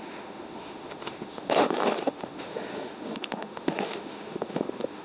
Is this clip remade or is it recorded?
remade